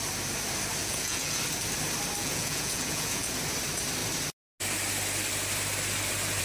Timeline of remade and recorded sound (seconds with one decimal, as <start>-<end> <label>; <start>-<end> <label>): 0.0-0.8 recorded; 0.8-1.4 remade; 1.4-2.2 recorded; 2.2-3.2 remade; 3.2-6.4 recorded